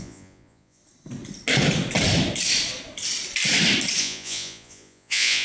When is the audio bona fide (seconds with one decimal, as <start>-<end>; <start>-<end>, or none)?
0.8-4.0